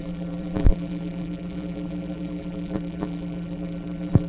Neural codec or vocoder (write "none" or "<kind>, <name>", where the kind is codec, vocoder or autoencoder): vocoder, BigVGAN v2